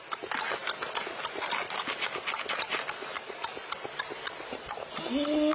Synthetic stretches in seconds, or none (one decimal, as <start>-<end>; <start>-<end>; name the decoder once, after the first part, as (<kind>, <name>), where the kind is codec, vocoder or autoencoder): none